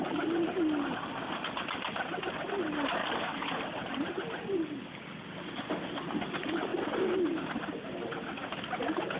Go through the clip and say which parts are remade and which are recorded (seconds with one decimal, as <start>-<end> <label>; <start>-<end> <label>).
0.0-3.0 recorded; 3.0-3.6 remade; 3.6-9.2 recorded

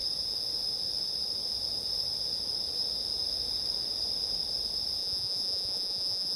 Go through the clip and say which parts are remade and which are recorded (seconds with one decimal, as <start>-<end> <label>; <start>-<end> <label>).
0.0-5.0 recorded; 5.0-6.4 remade

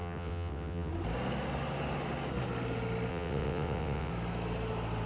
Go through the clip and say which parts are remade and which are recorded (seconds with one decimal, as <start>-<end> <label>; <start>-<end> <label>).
0.0-0.9 remade; 0.9-3.1 recorded; 3.1-4.1 remade; 4.1-5.1 recorded

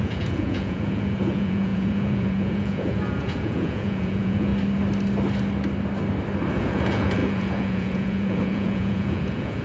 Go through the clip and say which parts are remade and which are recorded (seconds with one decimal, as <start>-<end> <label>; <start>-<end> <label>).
0.0-4.5 remade; 4.5-6.5 recorded; 6.5-9.6 remade

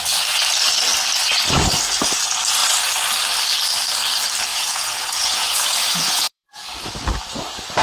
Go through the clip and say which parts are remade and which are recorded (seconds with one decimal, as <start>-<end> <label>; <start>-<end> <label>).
0.0-4.5 recorded; 4.5-5.5 remade; 5.5-5.9 recorded; 5.9-6.6 remade; 6.6-7.8 recorded

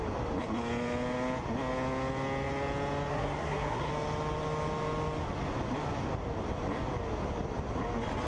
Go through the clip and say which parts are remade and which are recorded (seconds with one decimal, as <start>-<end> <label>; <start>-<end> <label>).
0.0-3.1 recorded; 3.1-3.9 remade; 3.9-8.3 recorded

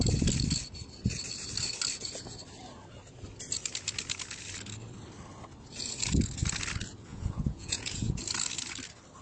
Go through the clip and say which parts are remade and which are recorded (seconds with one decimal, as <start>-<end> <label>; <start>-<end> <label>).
0.0-7.1 recorded; 7.1-8.2 remade; 8.2-9.2 recorded